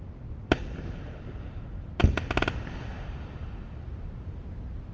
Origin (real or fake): real